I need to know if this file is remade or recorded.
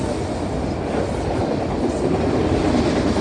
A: recorded